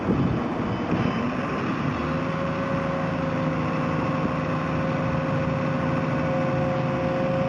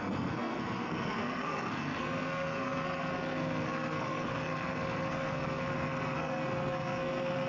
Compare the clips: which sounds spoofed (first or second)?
second